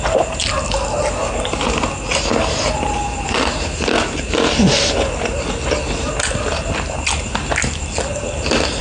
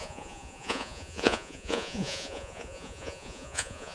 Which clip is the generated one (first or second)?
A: second